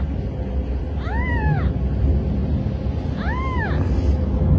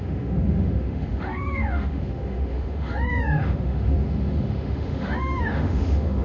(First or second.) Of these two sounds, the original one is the first